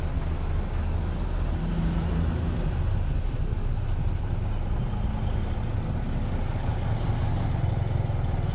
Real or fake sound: real